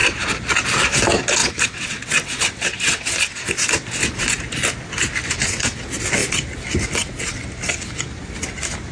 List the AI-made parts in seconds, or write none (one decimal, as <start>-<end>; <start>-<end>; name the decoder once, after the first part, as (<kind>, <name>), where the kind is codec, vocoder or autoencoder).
1.4-3.2 (vocoder, WaveNeXt)